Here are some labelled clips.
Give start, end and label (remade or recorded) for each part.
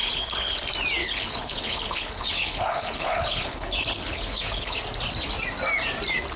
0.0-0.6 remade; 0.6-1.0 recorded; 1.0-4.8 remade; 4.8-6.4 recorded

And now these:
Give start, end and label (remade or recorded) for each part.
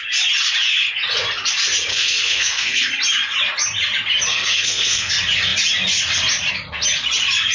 0.0-1.9 recorded; 1.9-2.8 remade; 2.8-4.3 recorded; 4.3-5.1 remade; 5.1-7.5 recorded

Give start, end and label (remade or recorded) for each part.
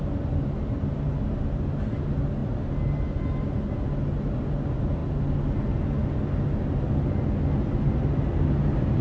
0.0-9.0 recorded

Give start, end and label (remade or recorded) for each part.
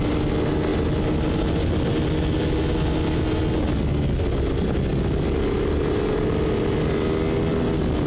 0.0-8.1 recorded